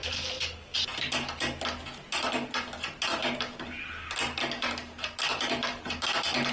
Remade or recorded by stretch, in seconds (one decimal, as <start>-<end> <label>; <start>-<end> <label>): 0.0-6.5 recorded